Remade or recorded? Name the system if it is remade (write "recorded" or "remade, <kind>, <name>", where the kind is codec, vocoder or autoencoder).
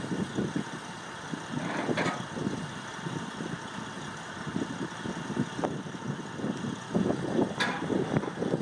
recorded